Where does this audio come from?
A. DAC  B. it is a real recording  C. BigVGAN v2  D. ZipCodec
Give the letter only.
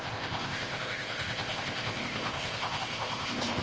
D